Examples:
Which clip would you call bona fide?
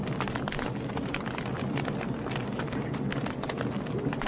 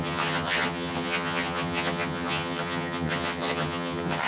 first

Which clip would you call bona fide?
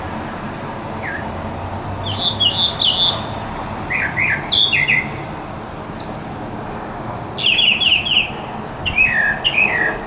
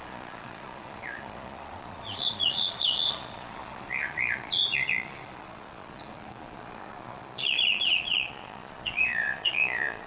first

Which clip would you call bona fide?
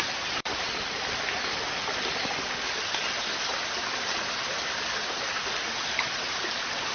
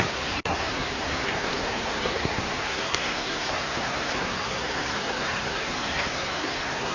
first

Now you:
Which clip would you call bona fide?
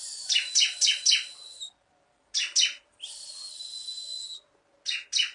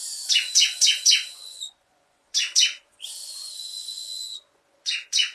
first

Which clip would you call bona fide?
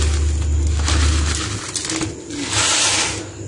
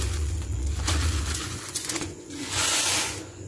first